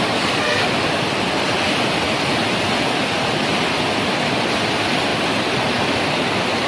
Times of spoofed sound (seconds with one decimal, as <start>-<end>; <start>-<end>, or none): 0.0-5.1; 6.1-6.7